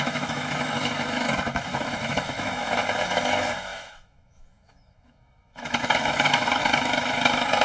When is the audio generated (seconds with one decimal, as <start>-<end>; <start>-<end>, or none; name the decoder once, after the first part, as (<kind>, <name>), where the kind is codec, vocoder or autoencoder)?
0.0-7.6 (autoencoder, DAC-VAE)

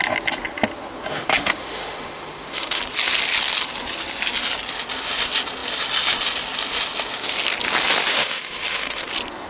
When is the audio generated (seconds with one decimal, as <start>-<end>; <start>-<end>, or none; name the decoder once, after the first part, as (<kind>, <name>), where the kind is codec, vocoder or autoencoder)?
1.1-2.8 (autoencoder, DAC-VAE); 8.1-9.1

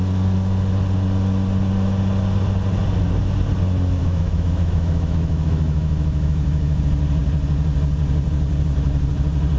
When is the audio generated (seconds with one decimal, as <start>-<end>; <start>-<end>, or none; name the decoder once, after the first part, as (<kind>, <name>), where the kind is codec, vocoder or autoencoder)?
4.0-6.8 (autoencoder, DAC-VAE)

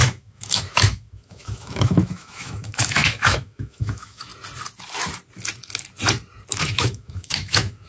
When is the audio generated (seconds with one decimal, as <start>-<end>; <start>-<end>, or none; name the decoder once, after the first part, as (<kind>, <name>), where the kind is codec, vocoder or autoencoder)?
0.0-4.3 (autoencoder, DAC-VAE); 6.5-7.9

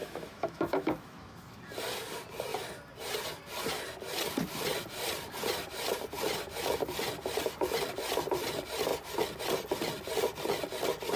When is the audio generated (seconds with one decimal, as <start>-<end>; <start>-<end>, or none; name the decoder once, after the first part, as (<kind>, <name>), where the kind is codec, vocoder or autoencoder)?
0.0-1.6 (autoencoder, DAC-VAE)

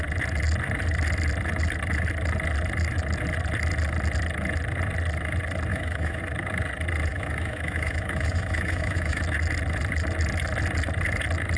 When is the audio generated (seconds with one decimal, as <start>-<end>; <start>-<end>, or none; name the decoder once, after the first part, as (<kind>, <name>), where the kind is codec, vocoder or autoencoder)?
5.7-6.2 (autoencoder, DAC-VAE); 7.1-9.2

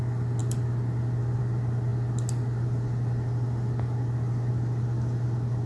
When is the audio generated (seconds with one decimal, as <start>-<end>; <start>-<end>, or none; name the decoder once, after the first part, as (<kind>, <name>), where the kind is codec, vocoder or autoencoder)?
none

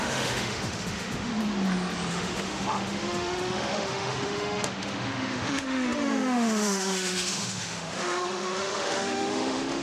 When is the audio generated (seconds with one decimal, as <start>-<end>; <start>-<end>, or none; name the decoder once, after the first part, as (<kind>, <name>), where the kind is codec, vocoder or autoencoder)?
0.0-1.3 (autoencoder, DAC-VAE); 2.1-9.8